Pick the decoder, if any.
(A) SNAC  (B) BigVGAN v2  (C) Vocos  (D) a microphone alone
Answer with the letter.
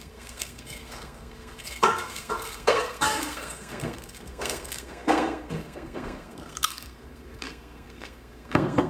A